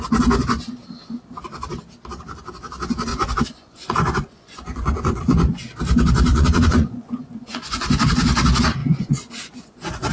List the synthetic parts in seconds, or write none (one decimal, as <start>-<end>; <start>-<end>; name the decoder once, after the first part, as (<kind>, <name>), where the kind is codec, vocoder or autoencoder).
3.1-5.2 (vocoder, Vocos); 6.3-8.1; 8.8-10.1